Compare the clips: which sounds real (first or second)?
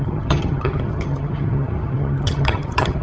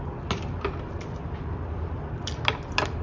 second